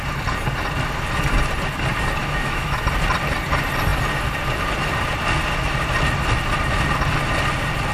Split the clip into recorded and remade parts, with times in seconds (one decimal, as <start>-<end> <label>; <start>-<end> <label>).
0.0-2.2 recorded; 2.2-2.8 remade; 2.8-7.9 recorded